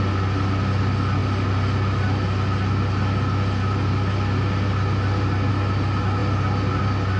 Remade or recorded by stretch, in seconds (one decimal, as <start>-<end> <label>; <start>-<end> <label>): 0.0-7.2 recorded